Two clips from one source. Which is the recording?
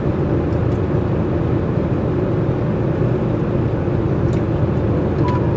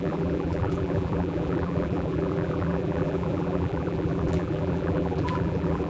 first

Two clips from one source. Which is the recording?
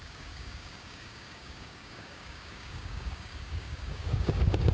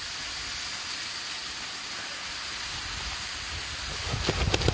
second